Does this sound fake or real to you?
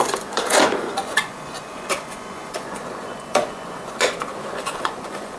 fake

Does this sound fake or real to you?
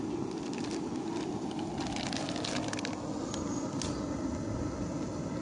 real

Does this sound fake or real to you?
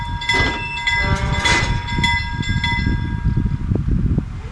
real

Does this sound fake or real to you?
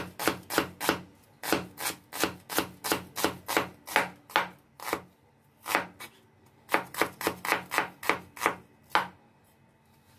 real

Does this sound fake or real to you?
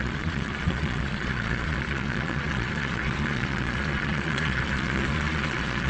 fake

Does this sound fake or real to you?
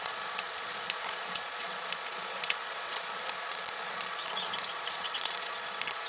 fake